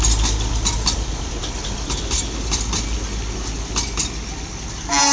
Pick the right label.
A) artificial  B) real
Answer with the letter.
B